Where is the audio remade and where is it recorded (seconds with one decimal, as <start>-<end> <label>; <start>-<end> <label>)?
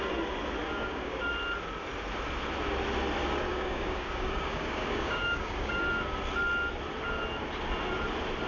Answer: 0.0-0.6 recorded; 0.6-1.3 remade; 1.3-3.5 recorded; 3.5-5.8 remade; 5.8-8.5 recorded